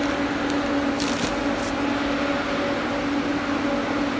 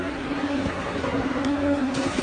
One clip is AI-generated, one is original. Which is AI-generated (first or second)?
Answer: second